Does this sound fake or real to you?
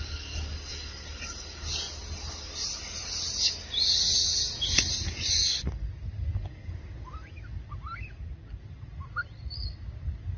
real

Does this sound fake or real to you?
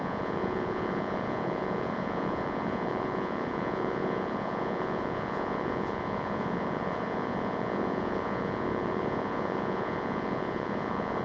fake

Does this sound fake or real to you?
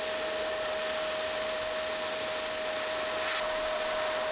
real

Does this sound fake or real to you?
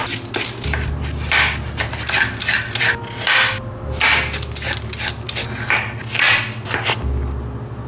real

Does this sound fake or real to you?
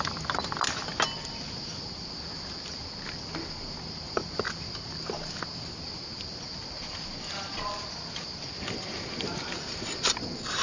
real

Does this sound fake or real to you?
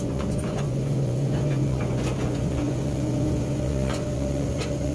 fake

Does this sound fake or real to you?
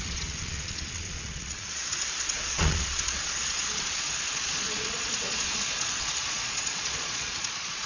fake